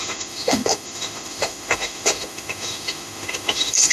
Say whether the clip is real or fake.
fake